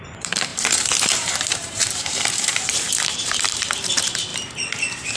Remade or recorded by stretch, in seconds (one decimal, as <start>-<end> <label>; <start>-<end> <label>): 0.0-0.5 remade; 0.5-1.0 recorded; 1.0-4.3 remade; 4.3-5.2 recorded